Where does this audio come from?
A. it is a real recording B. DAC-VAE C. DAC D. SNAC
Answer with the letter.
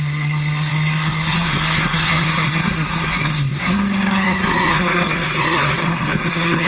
D